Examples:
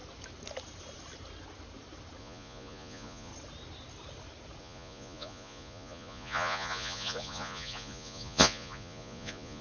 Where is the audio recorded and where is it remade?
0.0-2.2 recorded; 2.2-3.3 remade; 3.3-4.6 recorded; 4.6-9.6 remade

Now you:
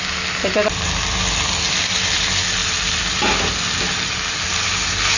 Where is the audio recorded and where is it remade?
0.0-5.2 recorded

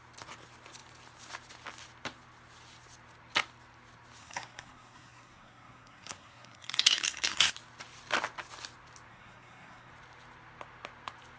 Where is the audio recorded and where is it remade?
0.0-4.2 recorded; 4.2-7.5 remade; 7.5-9.1 recorded; 9.1-9.9 remade; 9.9-11.4 recorded